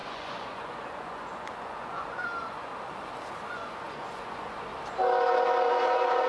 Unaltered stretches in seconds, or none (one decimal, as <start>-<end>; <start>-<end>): 2.7-3.5; 4.7-5.7

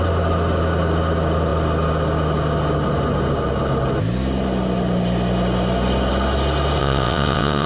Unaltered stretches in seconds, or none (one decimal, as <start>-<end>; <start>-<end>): 0.0-6.8

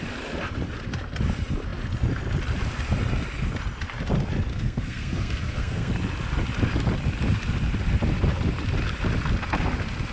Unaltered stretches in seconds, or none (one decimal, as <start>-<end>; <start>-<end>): 0.0-4.5; 5.9-10.1

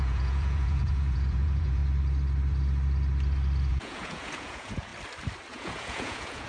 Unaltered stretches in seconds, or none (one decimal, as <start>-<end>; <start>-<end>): 1.8-3.7; 4.9-5.5

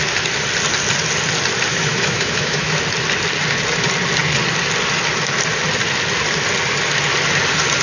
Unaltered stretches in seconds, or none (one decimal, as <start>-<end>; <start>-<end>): 0.0-1.7; 2.8-7.8

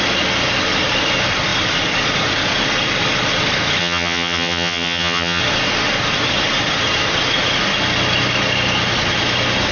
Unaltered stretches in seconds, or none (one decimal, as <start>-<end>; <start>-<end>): 0.0-3.8; 5.4-9.7

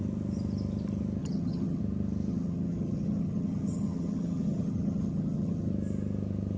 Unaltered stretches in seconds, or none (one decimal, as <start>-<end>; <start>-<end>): 0.0-1.2; 1.8-2.3; 5.7-6.6